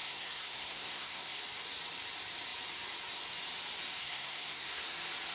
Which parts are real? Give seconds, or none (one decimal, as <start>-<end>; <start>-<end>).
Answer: 1.4-4.0; 4.8-5.3